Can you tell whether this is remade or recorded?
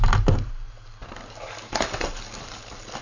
recorded